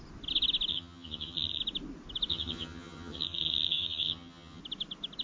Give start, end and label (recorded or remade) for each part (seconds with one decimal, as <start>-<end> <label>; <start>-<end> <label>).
0.0-0.7 recorded; 0.7-1.6 remade; 1.6-2.3 recorded; 2.3-4.6 remade; 4.6-5.2 recorded